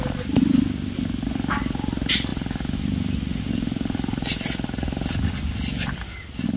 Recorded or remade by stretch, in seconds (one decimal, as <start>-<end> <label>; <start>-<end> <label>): 0.0-6.6 recorded